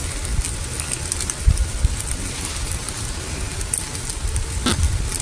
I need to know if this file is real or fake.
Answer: real